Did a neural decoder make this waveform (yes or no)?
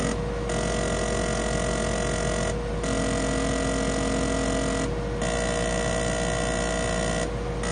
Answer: no